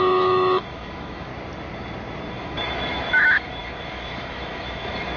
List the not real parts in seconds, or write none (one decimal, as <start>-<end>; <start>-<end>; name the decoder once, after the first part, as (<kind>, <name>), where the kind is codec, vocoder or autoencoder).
0.0-1.3 (autoencoder, DAC-VAE); 2.3-5.2